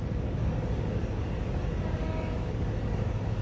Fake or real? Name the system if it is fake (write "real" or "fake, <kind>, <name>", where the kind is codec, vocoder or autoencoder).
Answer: fake, codec, DAC